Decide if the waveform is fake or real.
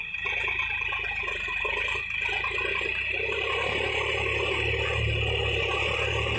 real